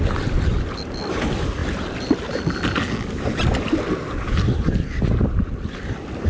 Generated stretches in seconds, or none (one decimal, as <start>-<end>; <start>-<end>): none